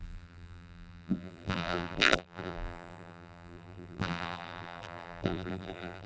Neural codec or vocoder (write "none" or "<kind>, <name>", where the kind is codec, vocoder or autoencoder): vocoder, BigVGAN v2